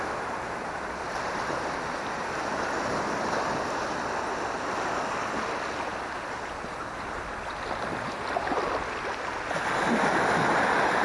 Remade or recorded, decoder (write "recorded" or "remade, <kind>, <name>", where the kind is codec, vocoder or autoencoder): recorded